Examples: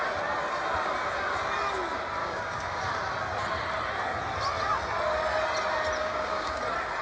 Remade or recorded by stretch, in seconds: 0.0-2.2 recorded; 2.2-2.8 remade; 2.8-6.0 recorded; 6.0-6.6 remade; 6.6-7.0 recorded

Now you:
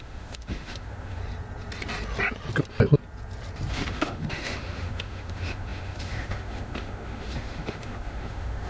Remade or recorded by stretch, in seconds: 0.0-1.2 remade; 1.2-3.7 recorded; 3.7-8.7 remade

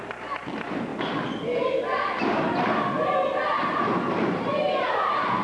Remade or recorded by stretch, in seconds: 0.0-5.4 recorded

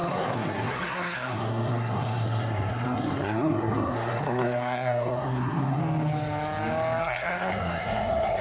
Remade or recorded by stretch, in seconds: 0.0-5.8 remade; 5.8-7.0 recorded; 7.0-8.4 remade

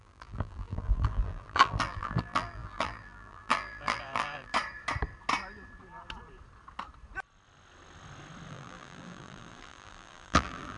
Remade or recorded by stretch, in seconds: 0.0-4.5 remade; 4.5-8.5 recorded; 8.5-10.8 remade